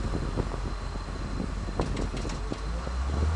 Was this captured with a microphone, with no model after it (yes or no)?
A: yes